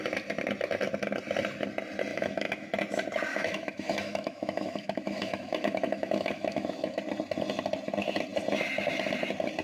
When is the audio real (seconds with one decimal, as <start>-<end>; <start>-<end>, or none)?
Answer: 0.0-2.1; 2.7-3.3; 7.0-9.6